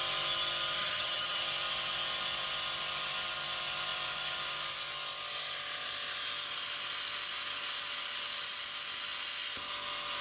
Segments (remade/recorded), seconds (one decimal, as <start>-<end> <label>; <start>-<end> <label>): 0.0-0.8 recorded; 0.8-1.4 remade; 1.4-10.2 recorded